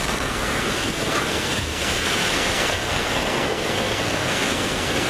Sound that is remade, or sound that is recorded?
remade